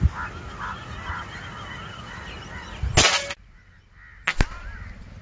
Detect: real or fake real